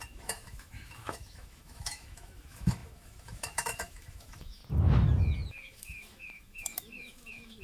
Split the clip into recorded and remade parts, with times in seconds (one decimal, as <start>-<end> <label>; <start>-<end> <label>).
0.0-4.6 remade; 4.6-5.5 recorded; 5.5-7.6 remade